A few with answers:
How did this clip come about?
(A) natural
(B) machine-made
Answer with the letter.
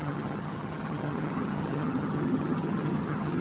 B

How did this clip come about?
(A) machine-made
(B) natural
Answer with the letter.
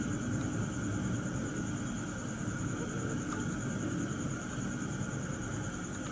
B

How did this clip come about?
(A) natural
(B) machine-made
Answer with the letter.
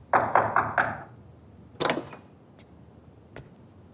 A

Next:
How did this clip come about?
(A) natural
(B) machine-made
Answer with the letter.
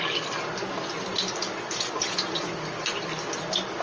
A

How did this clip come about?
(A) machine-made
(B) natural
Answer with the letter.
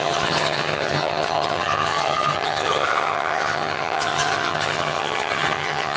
A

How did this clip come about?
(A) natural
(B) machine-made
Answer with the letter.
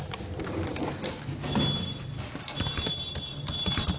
A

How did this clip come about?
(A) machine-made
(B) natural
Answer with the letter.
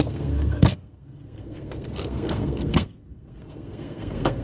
A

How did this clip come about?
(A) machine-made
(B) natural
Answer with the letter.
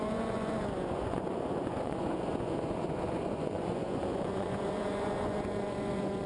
A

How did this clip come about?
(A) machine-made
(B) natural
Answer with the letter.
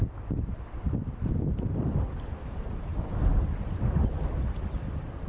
B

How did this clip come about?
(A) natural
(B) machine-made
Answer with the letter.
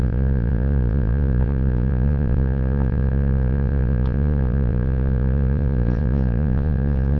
B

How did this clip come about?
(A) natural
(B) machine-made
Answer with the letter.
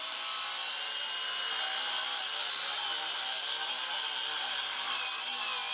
A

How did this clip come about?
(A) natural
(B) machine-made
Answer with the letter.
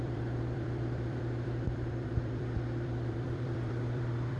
B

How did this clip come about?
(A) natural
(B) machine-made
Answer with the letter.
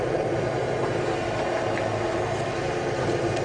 A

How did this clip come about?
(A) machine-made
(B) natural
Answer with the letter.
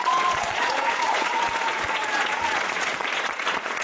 A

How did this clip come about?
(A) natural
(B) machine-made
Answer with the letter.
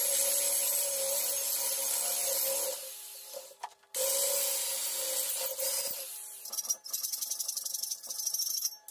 A